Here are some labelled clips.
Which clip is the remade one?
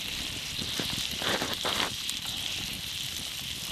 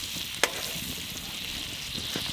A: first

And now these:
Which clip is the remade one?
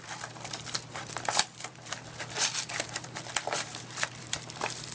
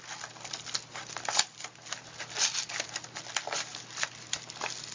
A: first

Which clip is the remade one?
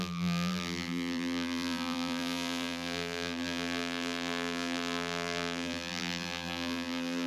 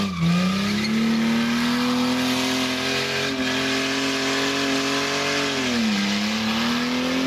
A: first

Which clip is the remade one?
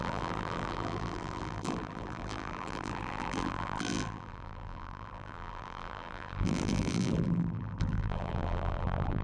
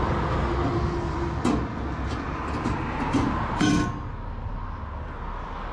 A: first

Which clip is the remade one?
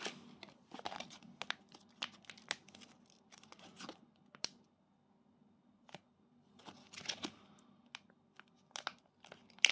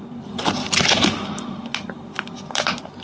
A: second